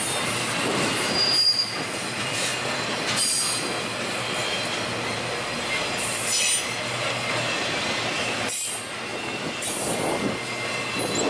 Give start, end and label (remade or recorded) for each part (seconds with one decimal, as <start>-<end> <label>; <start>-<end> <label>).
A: 0.0-9.1 recorded; 9.1-9.7 remade; 9.7-11.3 recorded